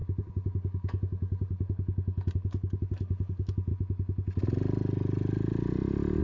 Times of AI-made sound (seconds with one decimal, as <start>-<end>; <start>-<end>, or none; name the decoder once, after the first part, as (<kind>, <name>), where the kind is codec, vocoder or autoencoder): 0.0-3.7 (codec, DAC)